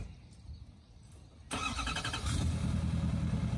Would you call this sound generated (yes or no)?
no